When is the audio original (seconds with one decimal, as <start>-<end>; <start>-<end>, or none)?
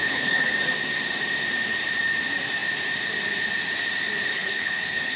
0.5-4.3